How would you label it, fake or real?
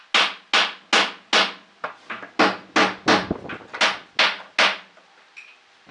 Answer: real